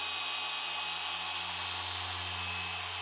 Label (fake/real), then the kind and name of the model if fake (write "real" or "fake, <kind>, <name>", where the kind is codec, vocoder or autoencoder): real